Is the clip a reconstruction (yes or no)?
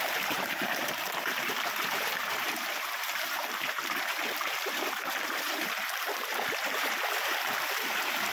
yes